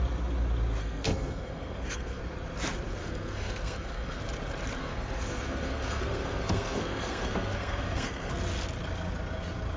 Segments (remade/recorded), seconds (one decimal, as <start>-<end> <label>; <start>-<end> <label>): 0.0-0.8 recorded; 0.8-2.2 remade; 2.2-3.0 recorded; 3.0-4.2 remade; 4.2-4.8 recorded; 4.8-8.3 remade; 8.3-9.8 recorded